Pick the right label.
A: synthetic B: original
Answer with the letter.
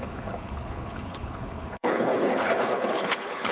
A